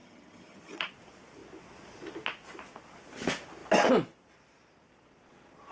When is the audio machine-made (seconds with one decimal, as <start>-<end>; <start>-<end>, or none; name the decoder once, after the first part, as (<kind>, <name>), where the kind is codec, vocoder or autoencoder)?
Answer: 0.0-0.9 (vocoder, HiFi-GAN)